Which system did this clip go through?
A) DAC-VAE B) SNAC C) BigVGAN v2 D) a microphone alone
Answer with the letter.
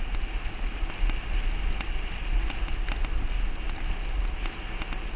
D